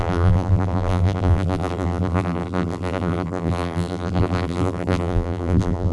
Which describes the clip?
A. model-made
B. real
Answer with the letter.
A